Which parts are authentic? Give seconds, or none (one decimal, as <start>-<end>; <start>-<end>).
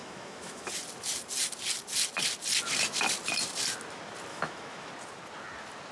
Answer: 0.7-4.3; 4.9-5.9